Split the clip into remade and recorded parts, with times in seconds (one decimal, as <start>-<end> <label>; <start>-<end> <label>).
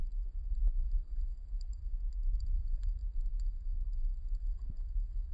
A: 0.0-0.5 recorded; 0.5-1.8 remade; 1.8-2.4 recorded; 2.4-5.3 remade